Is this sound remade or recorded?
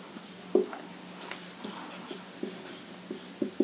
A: recorded